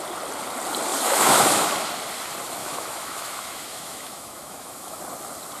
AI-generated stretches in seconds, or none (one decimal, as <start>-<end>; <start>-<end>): 0.9-1.9; 2.6-5.0